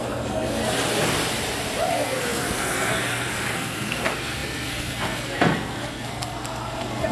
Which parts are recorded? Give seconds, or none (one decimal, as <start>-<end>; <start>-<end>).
0.6-1.9